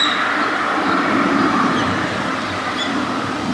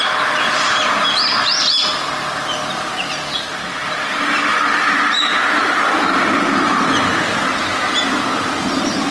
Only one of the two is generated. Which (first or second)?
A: first